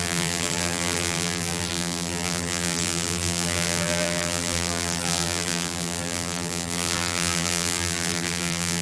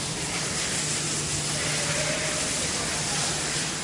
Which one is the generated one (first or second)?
first